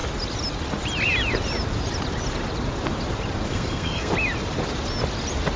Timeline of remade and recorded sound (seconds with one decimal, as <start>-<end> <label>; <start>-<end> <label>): 0.0-3.5 recorded; 3.5-4.1 remade; 4.1-5.6 recorded